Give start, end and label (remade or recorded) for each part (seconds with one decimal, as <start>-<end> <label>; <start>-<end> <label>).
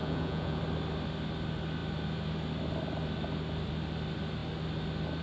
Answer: 0.0-0.6 remade; 0.6-5.2 recorded